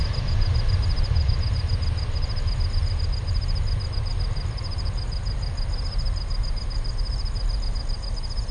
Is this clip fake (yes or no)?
no